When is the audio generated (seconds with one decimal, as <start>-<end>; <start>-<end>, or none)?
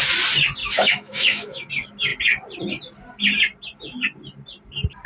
0.6-1.7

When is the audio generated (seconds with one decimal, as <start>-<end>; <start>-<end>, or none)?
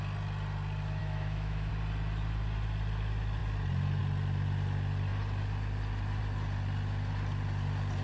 1.0-1.7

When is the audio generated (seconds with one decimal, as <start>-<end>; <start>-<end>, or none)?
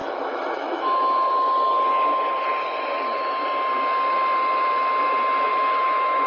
0.0-1.3; 5.5-6.3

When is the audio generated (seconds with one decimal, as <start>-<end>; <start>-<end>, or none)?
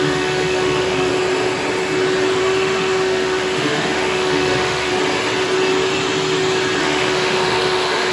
0.0-1.1; 2.4-4.9; 6.8-8.1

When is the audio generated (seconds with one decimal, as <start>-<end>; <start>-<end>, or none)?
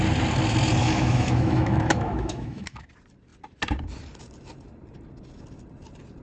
0.8-2.9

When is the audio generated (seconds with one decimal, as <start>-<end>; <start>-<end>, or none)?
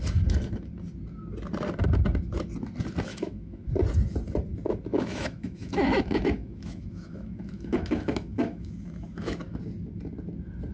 3.1-3.7; 4.9-9.6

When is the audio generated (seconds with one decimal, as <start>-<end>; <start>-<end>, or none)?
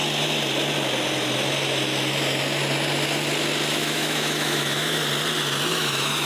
3.8-5.0; 5.7-6.3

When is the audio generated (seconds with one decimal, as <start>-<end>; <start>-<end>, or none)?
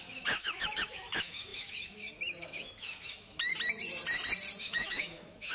0.0-3.5; 4.6-5.5